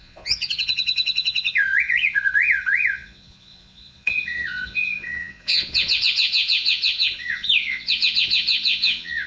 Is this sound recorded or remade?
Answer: remade